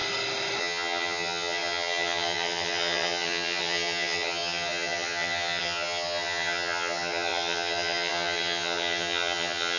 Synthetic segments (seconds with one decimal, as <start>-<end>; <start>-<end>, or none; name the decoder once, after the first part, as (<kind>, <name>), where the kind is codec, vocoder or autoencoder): 0.6-9.8 (vocoder, HiFi-GAN)